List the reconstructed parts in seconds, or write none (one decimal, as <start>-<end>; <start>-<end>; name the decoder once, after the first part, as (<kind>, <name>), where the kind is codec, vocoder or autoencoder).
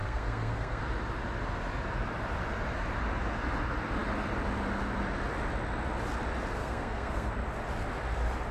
0.0-0.8 (codec, SNAC); 6.6-7.3